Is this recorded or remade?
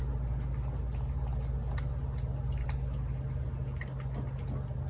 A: recorded